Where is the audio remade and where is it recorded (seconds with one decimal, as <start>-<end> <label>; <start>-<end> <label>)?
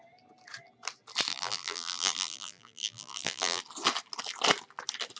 0.0-1.3 recorded; 1.3-3.6 remade; 3.6-5.2 recorded